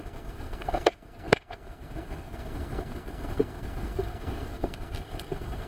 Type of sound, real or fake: fake